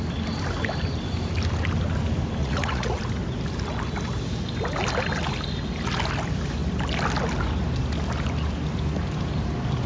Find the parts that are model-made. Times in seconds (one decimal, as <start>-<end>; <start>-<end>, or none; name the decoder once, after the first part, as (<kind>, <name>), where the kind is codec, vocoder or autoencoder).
2.4-3.0 (vocoder, Vocos)